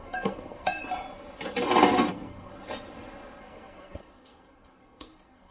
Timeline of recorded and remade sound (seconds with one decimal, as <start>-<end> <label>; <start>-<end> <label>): 0.0-0.8 remade; 0.8-2.1 recorded; 2.1-2.5 remade; 2.5-3.4 recorded; 3.4-5.5 remade